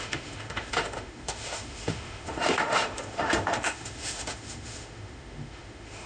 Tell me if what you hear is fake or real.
fake